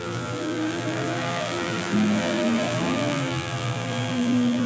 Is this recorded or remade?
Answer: remade